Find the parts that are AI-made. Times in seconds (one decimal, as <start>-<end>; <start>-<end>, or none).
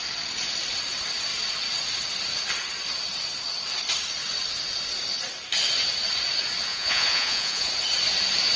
6.7-7.7